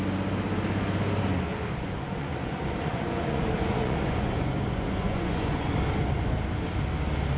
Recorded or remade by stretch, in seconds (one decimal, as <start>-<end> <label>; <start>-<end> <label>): 0.0-1.5 recorded; 1.5-5.7 remade; 5.7-7.4 recorded